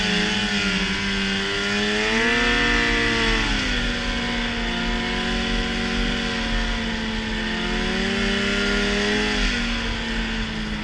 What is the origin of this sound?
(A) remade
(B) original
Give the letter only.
B